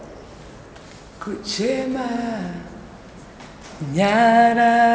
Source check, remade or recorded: recorded